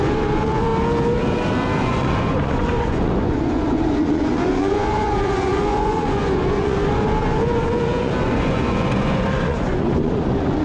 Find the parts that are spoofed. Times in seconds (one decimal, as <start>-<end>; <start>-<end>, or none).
0.0-0.7; 1.8-10.6